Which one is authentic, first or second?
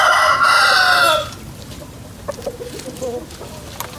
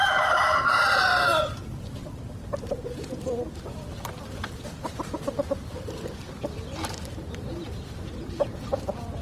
first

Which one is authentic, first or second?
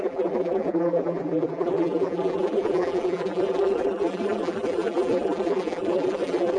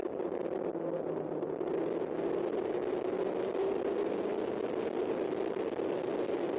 second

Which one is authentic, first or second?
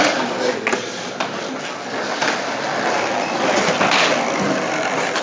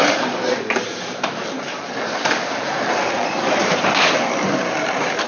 first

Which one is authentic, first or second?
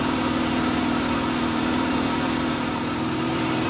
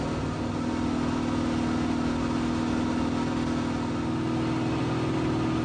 second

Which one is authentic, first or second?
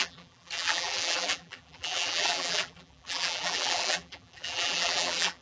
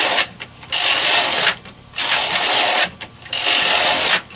second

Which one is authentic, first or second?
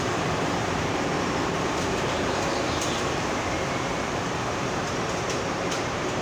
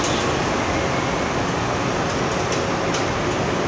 second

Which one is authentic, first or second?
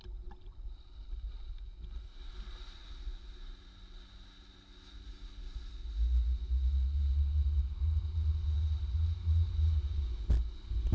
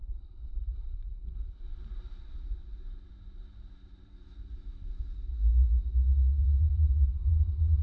first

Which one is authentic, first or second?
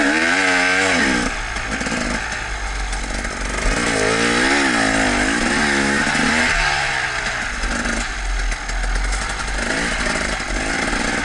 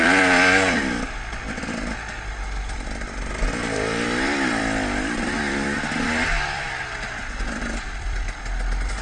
first